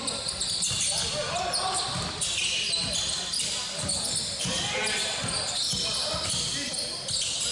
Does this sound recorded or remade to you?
recorded